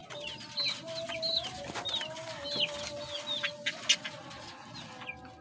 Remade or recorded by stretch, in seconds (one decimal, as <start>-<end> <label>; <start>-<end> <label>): 0.0-5.4 recorded